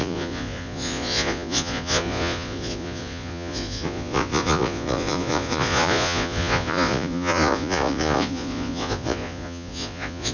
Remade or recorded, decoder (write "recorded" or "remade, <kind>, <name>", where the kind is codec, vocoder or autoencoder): remade, vocoder, Vocos